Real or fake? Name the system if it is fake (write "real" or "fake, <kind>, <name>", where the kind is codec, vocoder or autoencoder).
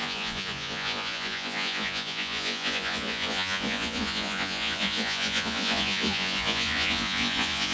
fake, vocoder, Vocos